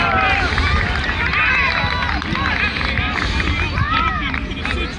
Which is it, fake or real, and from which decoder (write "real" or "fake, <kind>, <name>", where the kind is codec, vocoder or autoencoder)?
real